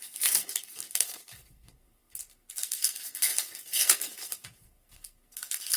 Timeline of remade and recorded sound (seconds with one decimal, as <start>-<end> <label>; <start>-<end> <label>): 0.0-5.8 remade